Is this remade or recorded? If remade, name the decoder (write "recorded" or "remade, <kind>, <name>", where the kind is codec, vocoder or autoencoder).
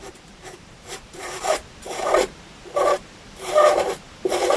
remade, vocoder, BigVGAN v2